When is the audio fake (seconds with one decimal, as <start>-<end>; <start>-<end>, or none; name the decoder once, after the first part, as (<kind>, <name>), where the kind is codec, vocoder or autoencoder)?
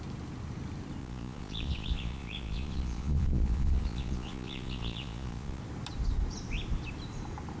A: 1.0-5.6 (vocoder, Vocos)